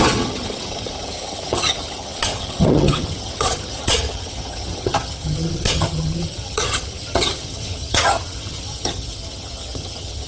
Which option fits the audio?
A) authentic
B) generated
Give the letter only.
B